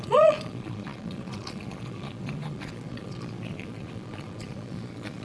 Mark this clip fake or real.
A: fake